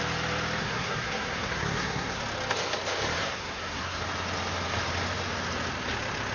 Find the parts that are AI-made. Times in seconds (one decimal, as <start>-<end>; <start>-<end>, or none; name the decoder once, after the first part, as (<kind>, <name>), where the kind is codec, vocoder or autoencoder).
0.6-2.2 (codec, SNAC); 3.2-4.0